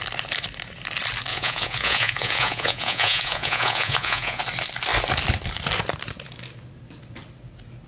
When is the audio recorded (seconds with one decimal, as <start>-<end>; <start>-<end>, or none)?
0.0-1.3; 4.4-7.9